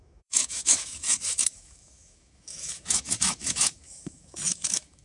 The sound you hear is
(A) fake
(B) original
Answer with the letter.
A